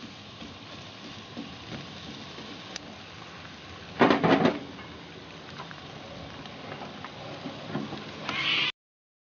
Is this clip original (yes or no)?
yes